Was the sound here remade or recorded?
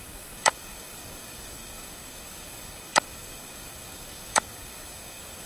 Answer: remade